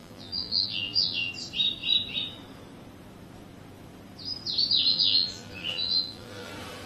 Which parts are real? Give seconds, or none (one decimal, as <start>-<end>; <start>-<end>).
1.3-4.9; 6.5-6.9